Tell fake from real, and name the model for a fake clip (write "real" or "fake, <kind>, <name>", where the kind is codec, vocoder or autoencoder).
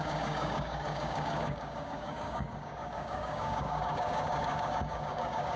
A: fake, codec, DAC